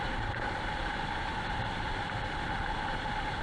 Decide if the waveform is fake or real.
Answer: real